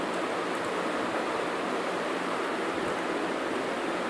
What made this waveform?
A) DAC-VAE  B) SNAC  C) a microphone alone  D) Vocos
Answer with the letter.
C